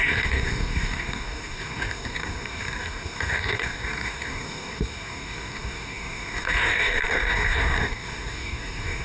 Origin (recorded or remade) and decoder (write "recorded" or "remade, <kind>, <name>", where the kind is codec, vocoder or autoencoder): remade, codec, DAC